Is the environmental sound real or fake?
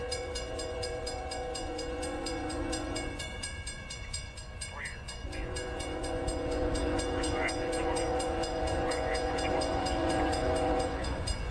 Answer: fake